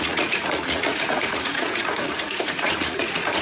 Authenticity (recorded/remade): remade